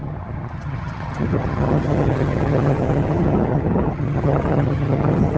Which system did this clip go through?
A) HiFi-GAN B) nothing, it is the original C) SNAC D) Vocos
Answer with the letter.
A